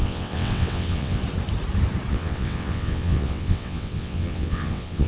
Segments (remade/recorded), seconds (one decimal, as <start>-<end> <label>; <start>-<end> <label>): 0.0-1.2 remade; 1.2-2.1 recorded; 2.1-5.1 remade